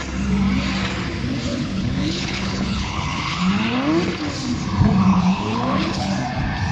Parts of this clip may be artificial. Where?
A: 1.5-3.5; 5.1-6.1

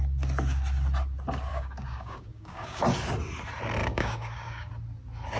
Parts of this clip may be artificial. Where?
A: 1.5-2.8; 3.8-4.7

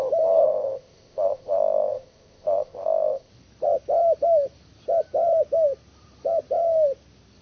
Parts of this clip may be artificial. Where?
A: 0.4-3.3

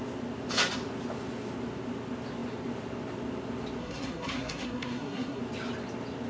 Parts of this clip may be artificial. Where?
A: 3.8-5.4

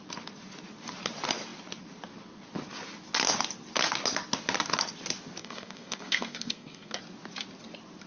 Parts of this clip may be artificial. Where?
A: 5.4-7.0